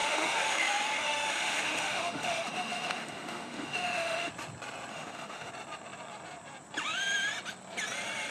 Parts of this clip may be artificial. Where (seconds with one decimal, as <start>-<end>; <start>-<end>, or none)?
0.0-4.3; 4.9-5.5